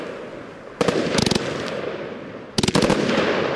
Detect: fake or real real